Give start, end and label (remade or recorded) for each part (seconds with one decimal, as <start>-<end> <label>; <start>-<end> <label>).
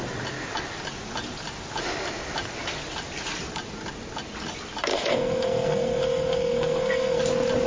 0.0-4.9 recorded; 4.9-7.2 remade; 7.2-7.7 recorded